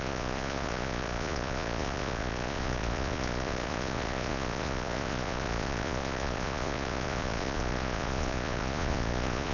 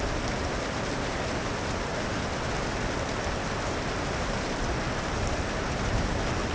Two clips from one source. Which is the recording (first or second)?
second